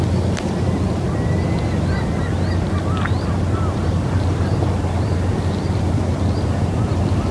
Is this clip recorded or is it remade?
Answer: recorded